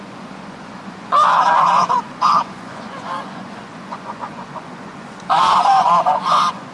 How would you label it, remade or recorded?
remade